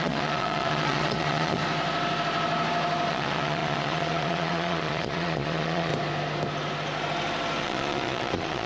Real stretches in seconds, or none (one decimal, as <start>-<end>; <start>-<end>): 1.6-3.1; 5.9-7.6